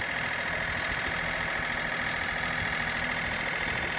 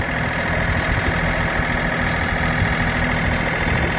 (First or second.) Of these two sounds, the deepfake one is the first